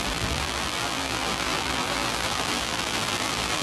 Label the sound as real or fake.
fake